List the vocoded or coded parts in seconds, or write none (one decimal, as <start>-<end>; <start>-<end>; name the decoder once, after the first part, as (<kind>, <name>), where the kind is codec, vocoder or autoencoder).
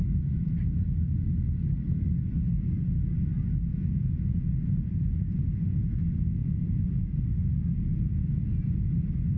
3.7-5.8 (vocoder, Vocos); 6.4-8.9